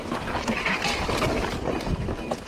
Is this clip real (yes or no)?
yes